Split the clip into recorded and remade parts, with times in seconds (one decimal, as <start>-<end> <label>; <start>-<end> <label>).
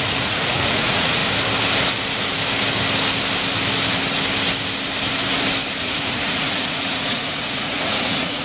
0.0-1.2 remade; 1.2-5.8 recorded; 5.8-8.4 remade